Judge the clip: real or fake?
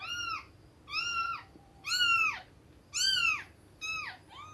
real